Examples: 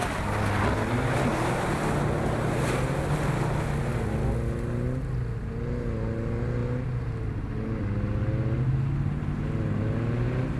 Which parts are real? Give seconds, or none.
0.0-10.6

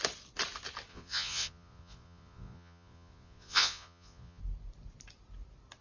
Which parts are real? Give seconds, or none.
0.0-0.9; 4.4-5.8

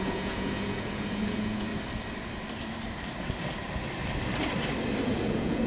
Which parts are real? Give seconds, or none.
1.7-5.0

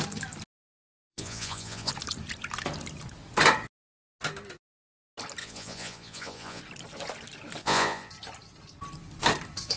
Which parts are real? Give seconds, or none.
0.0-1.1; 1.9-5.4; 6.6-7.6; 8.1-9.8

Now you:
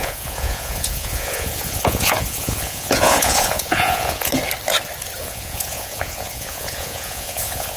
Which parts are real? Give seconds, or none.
4.3-5.2

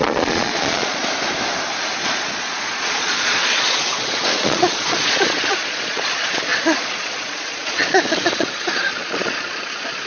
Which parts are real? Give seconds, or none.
1.0-2.0

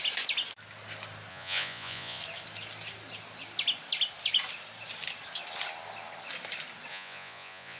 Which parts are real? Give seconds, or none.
0.0-1.3; 2.2-6.9

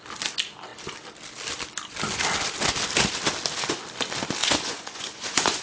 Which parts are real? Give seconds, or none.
0.0-4.4